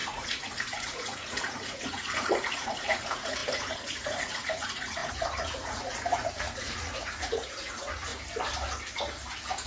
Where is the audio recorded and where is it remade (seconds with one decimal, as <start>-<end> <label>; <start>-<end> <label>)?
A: 0.0-8.1 remade; 8.1-9.7 recorded